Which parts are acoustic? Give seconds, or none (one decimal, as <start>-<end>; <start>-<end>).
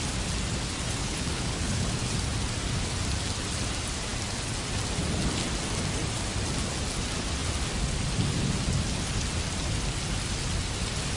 0.0-1.0; 1.9-11.2